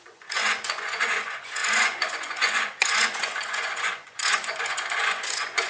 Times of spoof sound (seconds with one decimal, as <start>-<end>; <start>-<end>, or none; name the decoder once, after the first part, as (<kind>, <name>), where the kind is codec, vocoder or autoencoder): 0.0-5.7 (vocoder, Vocos)

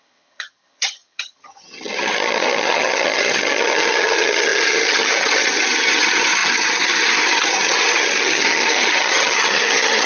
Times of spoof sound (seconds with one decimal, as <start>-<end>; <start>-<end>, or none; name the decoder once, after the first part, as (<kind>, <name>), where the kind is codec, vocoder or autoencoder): 0.0-10.1 (vocoder, HiFi-GAN)

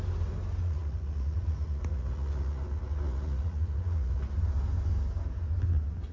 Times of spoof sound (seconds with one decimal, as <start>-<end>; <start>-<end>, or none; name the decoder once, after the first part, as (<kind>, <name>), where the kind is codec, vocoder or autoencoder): 0.6-4.3 (vocoder, Vocos)

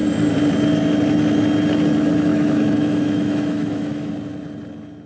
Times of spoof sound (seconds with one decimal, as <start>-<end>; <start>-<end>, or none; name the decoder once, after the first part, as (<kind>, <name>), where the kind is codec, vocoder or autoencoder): 2.3-4.1 (autoencoder, DAC-VAE)

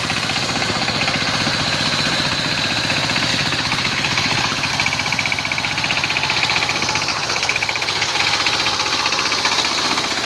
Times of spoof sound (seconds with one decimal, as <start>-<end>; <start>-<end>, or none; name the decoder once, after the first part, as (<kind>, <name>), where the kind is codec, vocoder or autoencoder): 3.3-4.7 (codec, HILCodec); 7.1-8.2

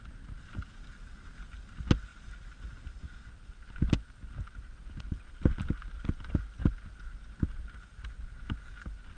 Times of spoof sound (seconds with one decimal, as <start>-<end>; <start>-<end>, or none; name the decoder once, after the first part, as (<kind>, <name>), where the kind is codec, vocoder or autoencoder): none

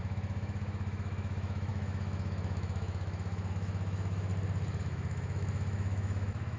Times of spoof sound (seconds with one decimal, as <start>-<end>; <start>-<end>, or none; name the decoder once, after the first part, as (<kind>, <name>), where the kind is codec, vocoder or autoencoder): 0.0-4.3 (autoencoder, DAC-VAE); 4.8-6.6

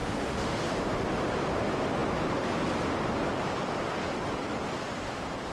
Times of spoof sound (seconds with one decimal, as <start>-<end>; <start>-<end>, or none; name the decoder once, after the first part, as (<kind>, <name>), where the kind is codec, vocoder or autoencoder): 0.0-0.6 (autoencoder, DAC-VAE)